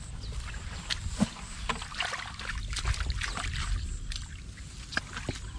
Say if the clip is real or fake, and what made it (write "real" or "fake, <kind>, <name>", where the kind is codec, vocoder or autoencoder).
real